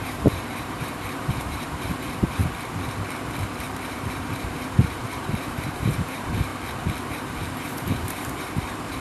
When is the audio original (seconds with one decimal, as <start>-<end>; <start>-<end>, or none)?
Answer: 2.4-3.6; 6.5-7.1